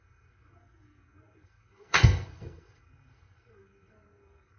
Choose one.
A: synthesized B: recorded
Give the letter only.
A